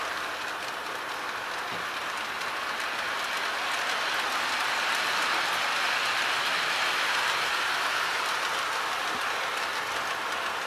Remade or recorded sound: recorded